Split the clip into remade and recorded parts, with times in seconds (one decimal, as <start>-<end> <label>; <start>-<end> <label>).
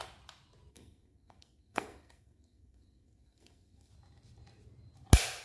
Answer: 0.0-0.7 recorded; 0.7-3.9 remade; 3.9-5.4 recorded